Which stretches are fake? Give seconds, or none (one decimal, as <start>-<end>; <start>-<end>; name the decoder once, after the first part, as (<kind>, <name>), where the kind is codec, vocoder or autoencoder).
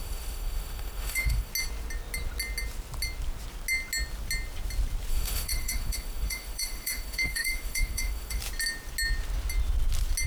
0.0-1.5 (autoencoder, DAC-VAE); 5.1-8.4